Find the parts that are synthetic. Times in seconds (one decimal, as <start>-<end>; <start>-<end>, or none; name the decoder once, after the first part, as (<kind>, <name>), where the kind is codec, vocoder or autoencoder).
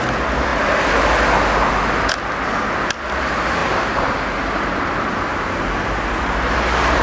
3.6-7.0 (vocoder, BigVGAN v2)